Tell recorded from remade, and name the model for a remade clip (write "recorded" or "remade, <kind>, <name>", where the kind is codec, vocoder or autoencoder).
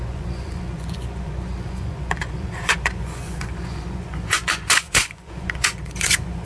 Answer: remade, vocoder, Vocos